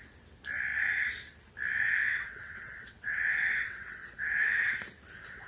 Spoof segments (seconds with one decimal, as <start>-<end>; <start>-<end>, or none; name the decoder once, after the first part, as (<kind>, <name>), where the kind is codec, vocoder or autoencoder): 2.0-4.8 (vocoder, WaveNeXt)